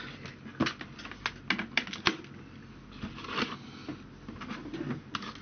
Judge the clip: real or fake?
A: real